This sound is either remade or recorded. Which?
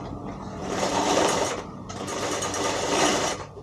remade